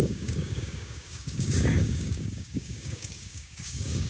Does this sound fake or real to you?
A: fake